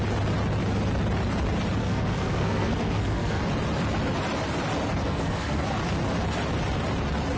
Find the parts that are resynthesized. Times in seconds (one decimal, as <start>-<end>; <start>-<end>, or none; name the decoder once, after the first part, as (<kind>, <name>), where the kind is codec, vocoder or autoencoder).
1.8-3.4 (codec, SNAC); 5.0-5.6